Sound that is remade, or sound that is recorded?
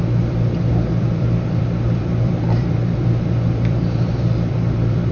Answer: remade